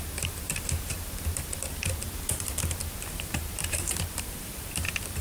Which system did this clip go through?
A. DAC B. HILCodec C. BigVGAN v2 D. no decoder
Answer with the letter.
C